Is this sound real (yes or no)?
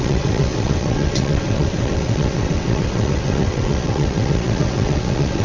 no